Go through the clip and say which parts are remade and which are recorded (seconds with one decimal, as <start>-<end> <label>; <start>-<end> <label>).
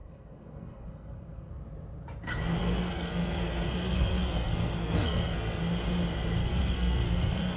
0.0-1.5 remade; 1.5-2.6 recorded; 2.6-5.6 remade; 5.6-6.4 recorded; 6.4-7.6 remade